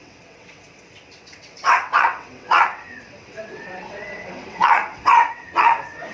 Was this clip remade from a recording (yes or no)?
yes